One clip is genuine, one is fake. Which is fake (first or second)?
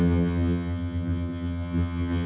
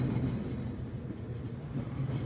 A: first